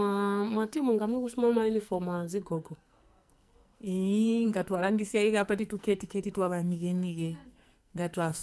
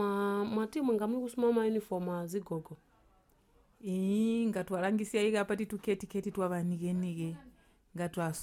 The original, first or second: second